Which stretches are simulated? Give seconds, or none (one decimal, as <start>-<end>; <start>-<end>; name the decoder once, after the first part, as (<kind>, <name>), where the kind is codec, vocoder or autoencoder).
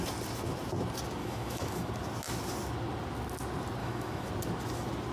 1.2-1.9 (autoencoder, DAC-VAE); 3.8-4.3